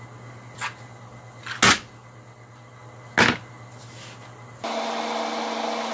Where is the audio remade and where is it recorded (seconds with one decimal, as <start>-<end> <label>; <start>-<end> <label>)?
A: 0.0-5.9 recorded